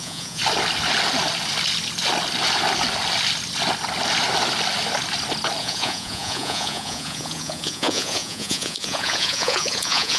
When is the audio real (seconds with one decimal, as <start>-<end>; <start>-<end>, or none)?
0.4-5.6